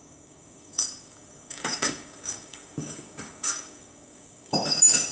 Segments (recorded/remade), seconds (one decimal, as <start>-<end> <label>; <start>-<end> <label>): 0.0-5.1 remade

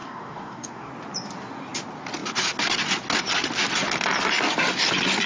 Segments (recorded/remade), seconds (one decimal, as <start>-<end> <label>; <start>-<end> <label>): 0.0-0.9 remade; 0.9-5.3 recorded

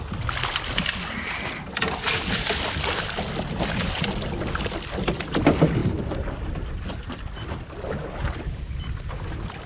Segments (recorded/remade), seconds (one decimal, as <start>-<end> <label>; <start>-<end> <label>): 0.0-9.7 recorded

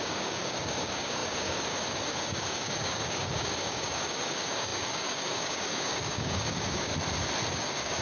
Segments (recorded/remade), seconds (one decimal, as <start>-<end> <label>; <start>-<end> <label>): 0.0-6.9 remade; 6.9-7.5 recorded; 7.5-8.0 remade

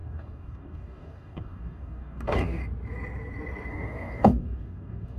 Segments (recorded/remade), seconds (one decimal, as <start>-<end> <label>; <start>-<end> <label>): 0.0-2.6 remade; 2.6-3.7 recorded; 3.7-5.2 remade

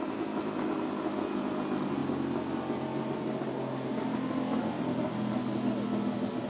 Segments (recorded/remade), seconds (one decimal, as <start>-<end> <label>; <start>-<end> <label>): 0.0-6.5 recorded

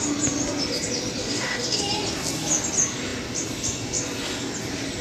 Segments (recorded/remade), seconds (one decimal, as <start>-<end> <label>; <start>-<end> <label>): 0.0-1.2 recorded; 1.2-1.8 remade; 1.8-5.0 recorded